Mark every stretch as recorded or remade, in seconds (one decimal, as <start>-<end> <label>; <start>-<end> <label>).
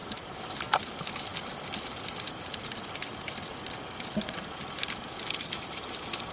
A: 0.0-6.3 recorded